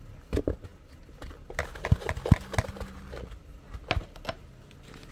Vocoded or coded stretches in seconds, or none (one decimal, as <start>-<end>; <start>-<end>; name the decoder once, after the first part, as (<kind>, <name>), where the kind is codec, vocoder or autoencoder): none